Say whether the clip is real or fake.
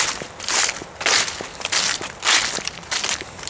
real